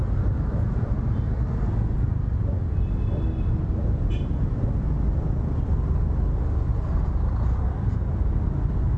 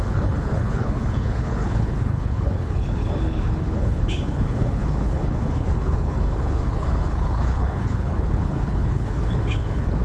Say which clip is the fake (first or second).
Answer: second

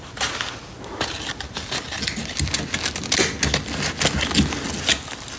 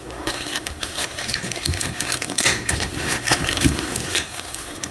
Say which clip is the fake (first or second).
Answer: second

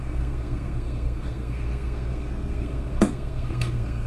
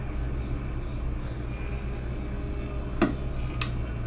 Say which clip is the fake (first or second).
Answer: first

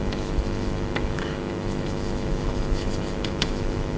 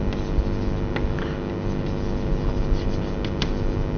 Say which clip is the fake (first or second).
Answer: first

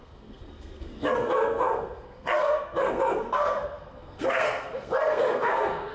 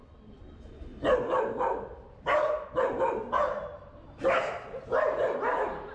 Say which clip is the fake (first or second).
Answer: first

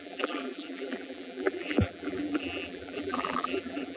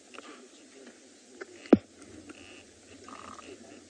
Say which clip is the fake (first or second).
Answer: first